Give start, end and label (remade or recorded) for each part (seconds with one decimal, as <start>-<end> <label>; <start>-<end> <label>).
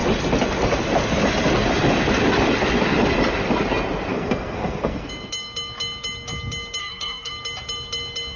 0.0-4.1 recorded; 4.1-5.1 remade; 5.1-6.8 recorded; 6.8-7.3 remade; 7.3-8.4 recorded